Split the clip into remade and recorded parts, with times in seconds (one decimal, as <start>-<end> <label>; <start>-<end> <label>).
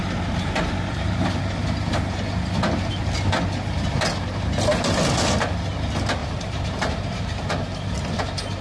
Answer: 0.0-6.2 recorded; 6.2-7.5 remade; 7.5-8.6 recorded